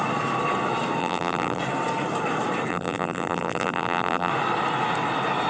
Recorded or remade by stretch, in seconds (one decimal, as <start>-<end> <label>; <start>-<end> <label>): 0.0-1.0 recorded; 1.0-1.6 remade; 1.6-2.7 recorded; 2.7-4.3 remade; 4.3-5.5 recorded